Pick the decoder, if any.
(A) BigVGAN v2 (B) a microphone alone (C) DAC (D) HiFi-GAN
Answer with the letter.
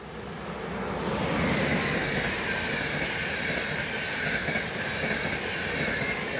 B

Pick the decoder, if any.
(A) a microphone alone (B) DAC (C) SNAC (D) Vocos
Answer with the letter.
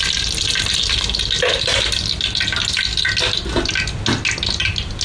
A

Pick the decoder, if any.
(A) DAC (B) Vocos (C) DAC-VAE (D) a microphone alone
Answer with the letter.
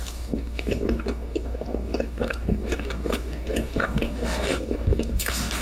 A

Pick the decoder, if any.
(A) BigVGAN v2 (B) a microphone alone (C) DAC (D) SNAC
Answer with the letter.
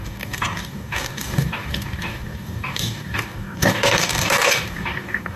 C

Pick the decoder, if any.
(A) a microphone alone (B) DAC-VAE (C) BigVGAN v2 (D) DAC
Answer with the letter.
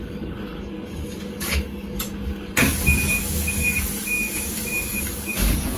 D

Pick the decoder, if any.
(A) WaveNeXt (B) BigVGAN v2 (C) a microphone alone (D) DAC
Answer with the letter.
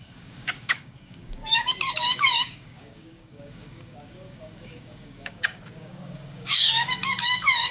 D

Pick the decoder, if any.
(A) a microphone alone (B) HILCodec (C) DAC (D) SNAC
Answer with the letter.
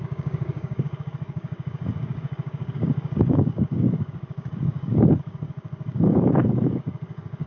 C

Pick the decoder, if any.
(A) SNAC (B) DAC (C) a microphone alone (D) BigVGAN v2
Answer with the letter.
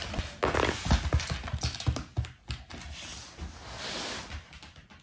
C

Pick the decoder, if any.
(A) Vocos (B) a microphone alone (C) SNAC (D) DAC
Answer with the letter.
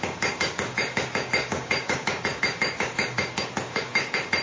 D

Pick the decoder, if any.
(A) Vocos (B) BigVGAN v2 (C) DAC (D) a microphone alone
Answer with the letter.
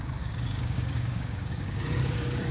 C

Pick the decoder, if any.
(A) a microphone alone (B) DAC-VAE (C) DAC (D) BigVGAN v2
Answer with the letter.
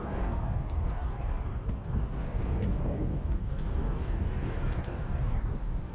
C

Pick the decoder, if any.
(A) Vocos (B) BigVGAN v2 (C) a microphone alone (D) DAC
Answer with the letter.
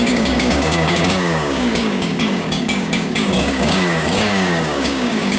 D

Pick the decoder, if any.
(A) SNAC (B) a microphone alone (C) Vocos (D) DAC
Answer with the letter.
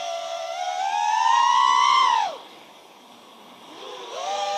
D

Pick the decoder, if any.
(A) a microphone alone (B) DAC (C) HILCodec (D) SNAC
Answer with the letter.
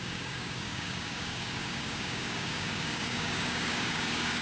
B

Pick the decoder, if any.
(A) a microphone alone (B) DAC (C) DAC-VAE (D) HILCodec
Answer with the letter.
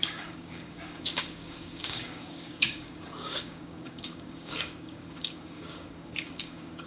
B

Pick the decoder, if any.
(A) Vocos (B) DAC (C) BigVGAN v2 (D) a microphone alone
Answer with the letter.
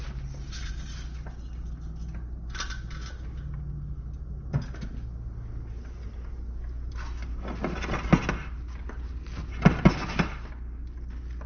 D